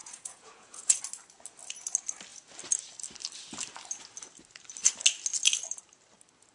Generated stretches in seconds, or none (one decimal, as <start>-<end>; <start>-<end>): 0.0-1.0